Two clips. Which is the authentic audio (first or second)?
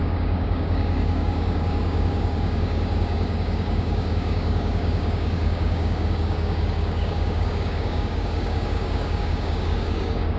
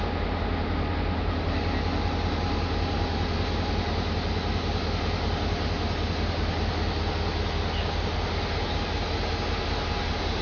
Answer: second